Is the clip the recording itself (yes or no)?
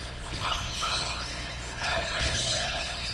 no